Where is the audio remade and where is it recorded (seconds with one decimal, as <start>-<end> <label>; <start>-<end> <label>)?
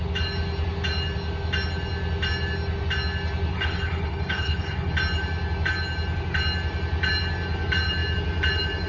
0.0-3.5 recorded; 3.5-4.9 remade; 4.9-8.9 recorded